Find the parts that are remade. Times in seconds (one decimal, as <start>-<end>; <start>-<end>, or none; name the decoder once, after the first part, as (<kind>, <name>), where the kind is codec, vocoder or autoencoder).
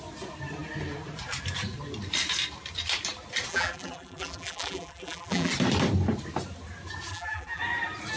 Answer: 3.5-5.5 (vocoder, BigVGAN v2); 7.1-7.6